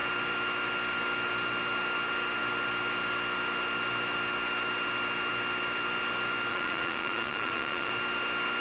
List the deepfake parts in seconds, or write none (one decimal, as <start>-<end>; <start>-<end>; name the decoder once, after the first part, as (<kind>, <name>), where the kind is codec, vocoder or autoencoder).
6.5-7.9 (vocoder, Vocos)